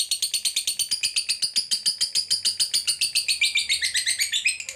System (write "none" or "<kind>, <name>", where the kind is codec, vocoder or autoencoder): none